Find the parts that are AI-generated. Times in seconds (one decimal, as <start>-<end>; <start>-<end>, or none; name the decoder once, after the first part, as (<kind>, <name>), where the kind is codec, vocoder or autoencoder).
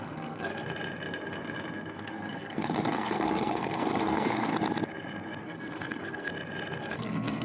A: 0.0-0.5 (codec, SNAC); 1.9-4.5; 5.4-6.3; 6.9-7.4